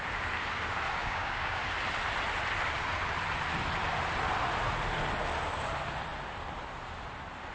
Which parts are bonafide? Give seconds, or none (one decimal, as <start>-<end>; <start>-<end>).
0.0-1.0; 1.6-7.5